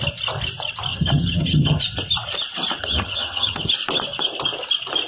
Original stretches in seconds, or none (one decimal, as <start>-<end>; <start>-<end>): 0.0-0.9; 1.8-2.8; 3.7-5.1